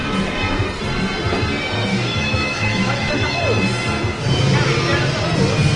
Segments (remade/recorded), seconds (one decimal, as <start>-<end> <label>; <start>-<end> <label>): 0.0-1.9 recorded; 1.9-3.4 remade; 3.4-5.8 recorded